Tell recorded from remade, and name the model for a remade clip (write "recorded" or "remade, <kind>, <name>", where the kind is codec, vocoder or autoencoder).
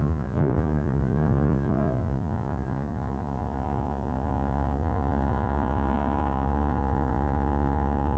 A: remade, vocoder, Vocos